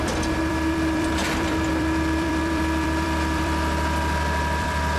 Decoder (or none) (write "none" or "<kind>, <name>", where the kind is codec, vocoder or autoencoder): vocoder, BigVGAN v2